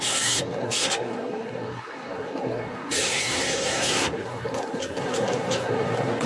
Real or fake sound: fake